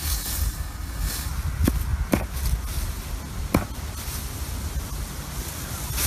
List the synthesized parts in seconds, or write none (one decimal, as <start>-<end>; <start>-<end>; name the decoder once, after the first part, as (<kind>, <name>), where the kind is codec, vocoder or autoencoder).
0.0-1.3 (codec, DAC)